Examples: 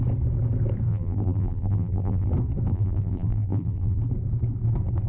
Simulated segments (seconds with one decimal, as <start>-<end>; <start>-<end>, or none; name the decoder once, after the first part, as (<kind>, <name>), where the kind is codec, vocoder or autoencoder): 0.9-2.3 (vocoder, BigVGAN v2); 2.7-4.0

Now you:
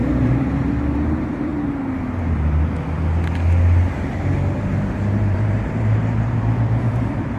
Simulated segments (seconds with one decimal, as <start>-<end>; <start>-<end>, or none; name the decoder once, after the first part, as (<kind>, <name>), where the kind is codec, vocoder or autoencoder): 0.0-1.5 (vocoder, BigVGAN v2); 4.6-7.4

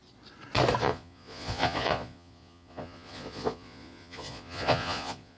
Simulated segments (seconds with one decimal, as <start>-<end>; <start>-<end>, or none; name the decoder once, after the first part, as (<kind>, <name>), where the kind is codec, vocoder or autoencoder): 0.8-5.4 (vocoder, Vocos)

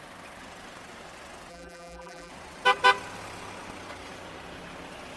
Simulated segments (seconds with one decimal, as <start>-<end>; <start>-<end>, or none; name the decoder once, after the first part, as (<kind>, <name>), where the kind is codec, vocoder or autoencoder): 1.5-2.3 (vocoder, BigVGAN v2)

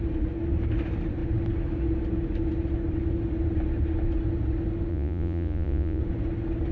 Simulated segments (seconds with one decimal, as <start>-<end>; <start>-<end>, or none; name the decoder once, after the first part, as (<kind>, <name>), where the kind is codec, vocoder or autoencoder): 4.9-6.0 (vocoder, Vocos)